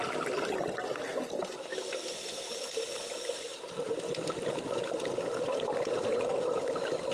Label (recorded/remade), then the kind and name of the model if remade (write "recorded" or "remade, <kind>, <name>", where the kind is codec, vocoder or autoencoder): recorded